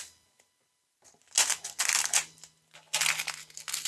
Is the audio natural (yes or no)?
yes